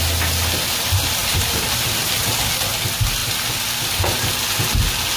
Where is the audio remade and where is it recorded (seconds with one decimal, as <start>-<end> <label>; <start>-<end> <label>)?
0.0-1.2 recorded; 1.2-2.0 remade; 2.0-5.2 recorded